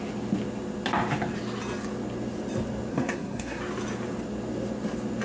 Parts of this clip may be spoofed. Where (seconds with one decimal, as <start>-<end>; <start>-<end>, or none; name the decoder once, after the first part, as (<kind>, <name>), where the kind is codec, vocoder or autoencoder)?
2.9-3.6 (codec, SNAC)